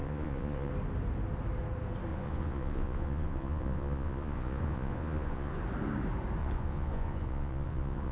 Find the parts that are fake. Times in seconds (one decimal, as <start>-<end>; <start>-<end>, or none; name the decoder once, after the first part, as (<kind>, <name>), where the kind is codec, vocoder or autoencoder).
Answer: 0.0-0.7 (vocoder, Vocos); 2.1-5.6; 6.4-8.1